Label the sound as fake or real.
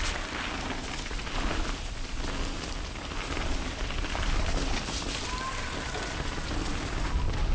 real